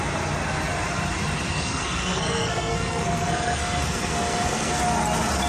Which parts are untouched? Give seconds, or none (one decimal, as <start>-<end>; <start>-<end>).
0.0-1.5; 4.8-5.5